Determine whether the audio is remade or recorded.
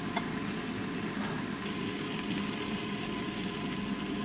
recorded